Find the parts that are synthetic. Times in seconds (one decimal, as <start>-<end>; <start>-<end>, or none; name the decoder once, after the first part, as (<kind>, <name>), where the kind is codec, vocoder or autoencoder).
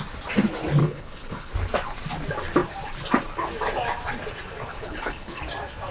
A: 0.8-1.5 (codec, HILCodec); 4.7-5.4